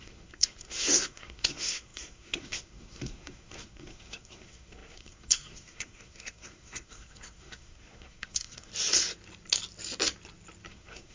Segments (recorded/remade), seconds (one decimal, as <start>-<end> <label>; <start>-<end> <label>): 0.0-8.7 remade; 8.7-10.7 recorded; 10.7-11.1 remade